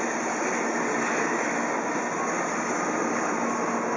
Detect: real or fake real